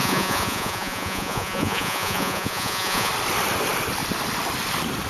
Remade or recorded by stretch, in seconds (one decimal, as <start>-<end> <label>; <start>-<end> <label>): 0.0-3.1 remade; 3.1-5.1 recorded